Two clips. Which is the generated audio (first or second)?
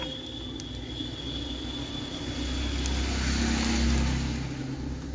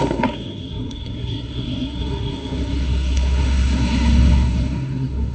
second